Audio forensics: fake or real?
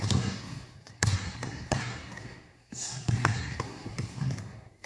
fake